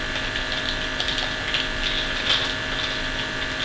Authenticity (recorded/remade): recorded